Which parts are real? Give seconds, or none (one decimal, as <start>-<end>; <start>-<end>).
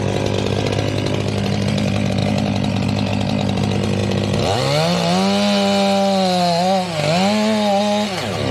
0.0-8.5